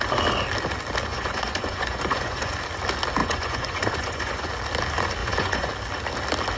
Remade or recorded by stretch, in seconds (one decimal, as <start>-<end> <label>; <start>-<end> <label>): 0.0-1.1 recorded; 1.1-2.5 remade; 2.5-3.2 recorded; 3.2-4.5 remade; 4.5-5.2 recorded; 5.2-5.7 remade; 5.7-6.6 recorded